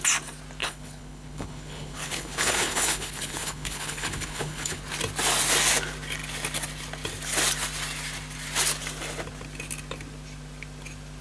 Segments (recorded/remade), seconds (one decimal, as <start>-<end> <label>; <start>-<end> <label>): 0.0-0.6 recorded; 0.6-4.8 remade; 4.8-11.2 recorded

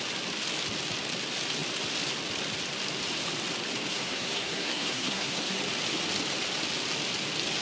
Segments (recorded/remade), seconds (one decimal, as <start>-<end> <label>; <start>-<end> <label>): 0.0-3.9 recorded; 3.9-5.6 remade; 5.6-7.6 recorded

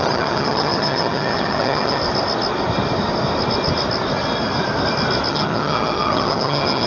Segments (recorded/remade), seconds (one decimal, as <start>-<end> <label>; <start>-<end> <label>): 0.0-2.0 remade; 2.0-5.3 recorded; 5.3-6.9 remade

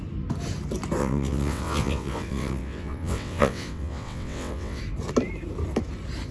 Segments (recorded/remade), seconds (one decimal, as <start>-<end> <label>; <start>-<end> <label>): 0.0-1.0 recorded; 1.0-4.8 remade; 4.8-6.3 recorded

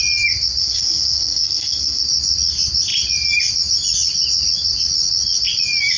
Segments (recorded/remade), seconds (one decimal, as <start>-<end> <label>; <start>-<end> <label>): 0.0-0.6 recorded; 0.6-2.0 remade; 2.0-6.0 recorded

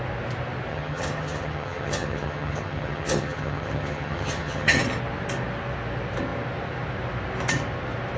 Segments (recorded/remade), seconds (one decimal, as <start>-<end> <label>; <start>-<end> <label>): 0.0-0.7 recorded; 0.7-4.8 remade; 4.8-8.2 recorded